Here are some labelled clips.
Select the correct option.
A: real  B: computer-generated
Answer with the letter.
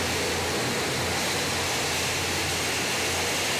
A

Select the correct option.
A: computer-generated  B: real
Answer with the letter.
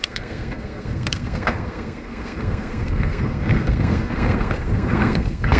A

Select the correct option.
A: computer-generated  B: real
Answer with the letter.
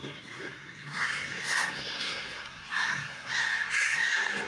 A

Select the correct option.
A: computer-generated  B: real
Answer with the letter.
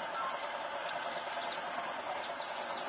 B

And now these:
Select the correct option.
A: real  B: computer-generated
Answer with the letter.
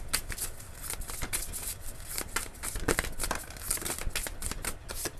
A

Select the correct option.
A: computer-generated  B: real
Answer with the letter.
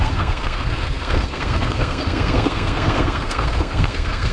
A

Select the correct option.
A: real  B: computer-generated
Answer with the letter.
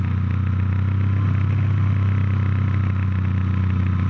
A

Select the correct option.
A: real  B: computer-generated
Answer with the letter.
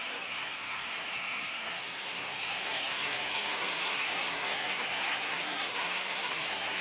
B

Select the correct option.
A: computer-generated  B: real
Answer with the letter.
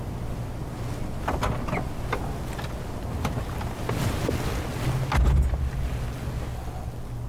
B